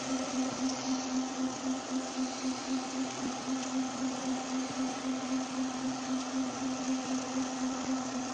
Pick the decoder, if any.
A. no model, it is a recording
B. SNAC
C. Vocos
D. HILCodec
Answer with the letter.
C